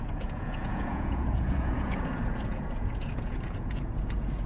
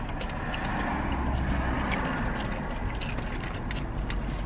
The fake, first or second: first